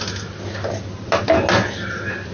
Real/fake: real